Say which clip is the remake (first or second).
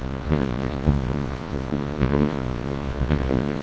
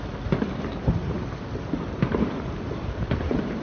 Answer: first